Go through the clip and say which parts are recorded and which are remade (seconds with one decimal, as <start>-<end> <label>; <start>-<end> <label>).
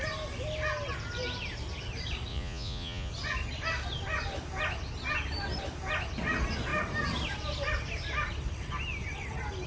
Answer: 0.0-2.3 recorded; 2.3-3.1 remade; 3.1-9.7 recorded